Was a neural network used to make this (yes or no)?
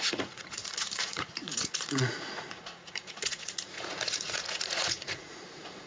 yes